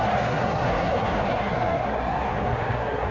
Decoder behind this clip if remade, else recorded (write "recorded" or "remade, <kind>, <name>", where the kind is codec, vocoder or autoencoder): remade, codec, SNAC